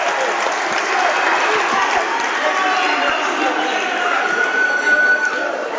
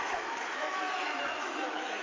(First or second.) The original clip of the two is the first